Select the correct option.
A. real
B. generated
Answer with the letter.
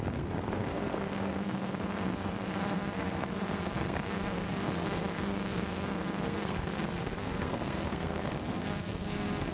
B